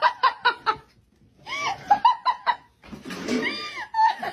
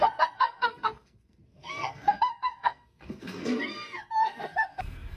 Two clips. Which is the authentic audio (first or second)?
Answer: first